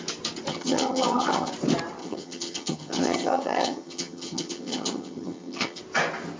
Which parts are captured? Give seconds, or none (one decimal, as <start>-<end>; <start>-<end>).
0.0-0.5; 1.5-2.0; 5.8-6.4